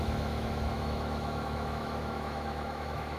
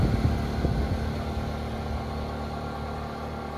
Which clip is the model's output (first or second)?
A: first